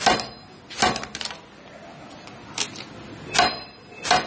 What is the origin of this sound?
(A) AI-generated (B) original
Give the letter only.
B